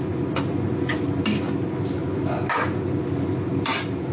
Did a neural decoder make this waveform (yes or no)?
no